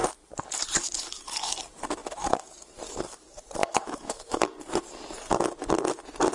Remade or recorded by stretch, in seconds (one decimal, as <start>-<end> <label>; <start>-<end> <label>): 0.0-3.6 recorded; 3.6-4.4 remade; 4.4-6.3 recorded